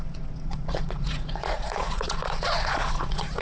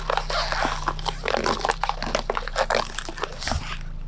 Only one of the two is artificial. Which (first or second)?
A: first